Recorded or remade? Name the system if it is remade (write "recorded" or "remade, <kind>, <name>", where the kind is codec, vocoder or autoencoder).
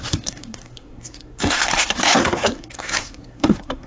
remade, codec, SNAC